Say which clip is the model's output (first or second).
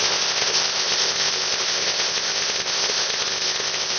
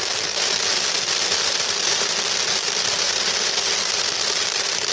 first